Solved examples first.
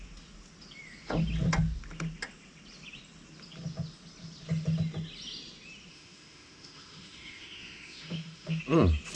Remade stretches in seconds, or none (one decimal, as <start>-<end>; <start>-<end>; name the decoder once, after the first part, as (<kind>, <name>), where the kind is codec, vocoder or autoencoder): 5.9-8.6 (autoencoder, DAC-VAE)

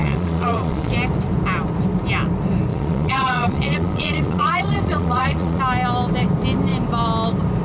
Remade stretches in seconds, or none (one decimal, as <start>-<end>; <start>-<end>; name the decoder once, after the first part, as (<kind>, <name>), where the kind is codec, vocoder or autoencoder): 0.0-0.9 (vocoder, Vocos); 2.7-5.6

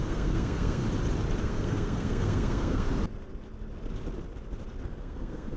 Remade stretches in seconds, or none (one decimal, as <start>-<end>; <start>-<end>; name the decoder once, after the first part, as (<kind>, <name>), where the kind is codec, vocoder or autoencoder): 0.0-0.8 (codec, SNAC); 1.4-2.9; 5.0-5.6

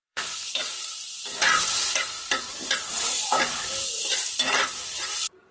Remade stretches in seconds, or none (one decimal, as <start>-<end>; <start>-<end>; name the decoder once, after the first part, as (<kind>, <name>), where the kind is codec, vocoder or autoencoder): 0.0-0.5 (vocoder, Vocos)

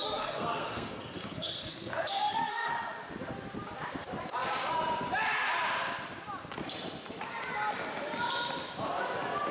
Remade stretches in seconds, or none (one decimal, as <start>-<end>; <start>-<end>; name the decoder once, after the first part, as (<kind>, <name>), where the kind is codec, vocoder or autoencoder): 0.0-2.7 (codec, SNAC)